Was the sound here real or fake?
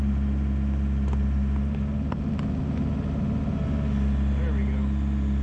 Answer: real